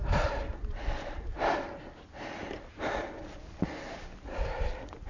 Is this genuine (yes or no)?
yes